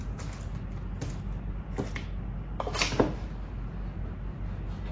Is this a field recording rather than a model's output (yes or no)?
yes